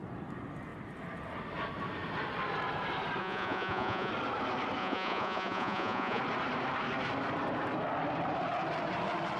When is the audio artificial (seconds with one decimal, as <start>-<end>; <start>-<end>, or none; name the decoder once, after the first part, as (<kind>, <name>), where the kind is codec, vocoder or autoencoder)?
3.2-4.1 (vocoder, Vocos); 4.8-6.2